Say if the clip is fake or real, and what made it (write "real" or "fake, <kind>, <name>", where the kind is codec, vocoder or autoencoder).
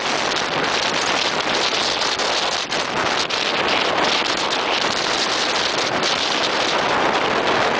real